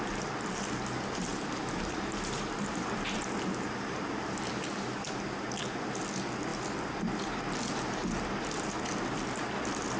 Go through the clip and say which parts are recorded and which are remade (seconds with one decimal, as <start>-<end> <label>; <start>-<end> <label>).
0.0-1.3 recorded; 1.3-4.5 remade; 4.5-10.0 recorded